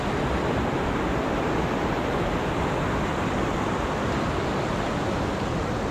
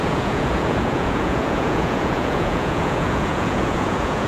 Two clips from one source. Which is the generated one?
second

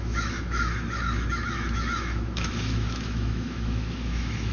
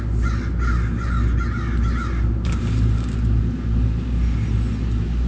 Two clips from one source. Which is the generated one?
first